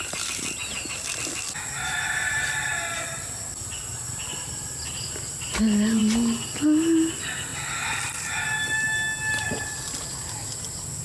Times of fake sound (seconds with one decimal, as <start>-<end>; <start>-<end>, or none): none